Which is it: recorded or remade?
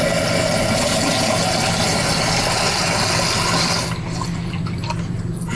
recorded